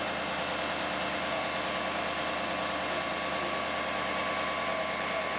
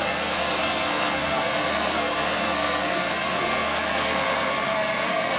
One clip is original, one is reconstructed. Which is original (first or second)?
first